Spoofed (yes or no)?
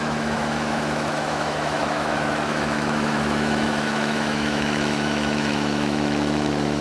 yes